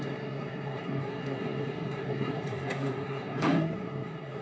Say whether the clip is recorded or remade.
remade